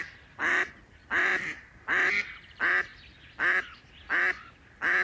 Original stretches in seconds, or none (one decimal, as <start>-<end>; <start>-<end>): none